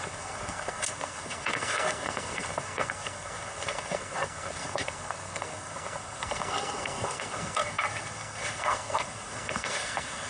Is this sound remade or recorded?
remade